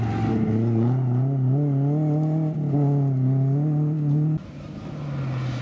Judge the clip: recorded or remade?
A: recorded